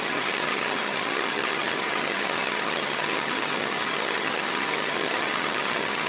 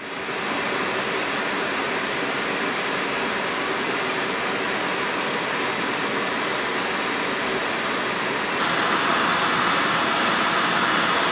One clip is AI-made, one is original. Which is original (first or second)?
second